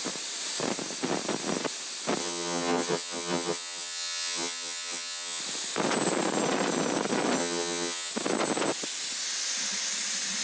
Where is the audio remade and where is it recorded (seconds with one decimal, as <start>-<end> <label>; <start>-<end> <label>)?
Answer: 0.0-2.2 recorded; 2.2-5.4 remade; 5.4-7.4 recorded; 7.4-8.1 remade; 8.1-10.4 recorded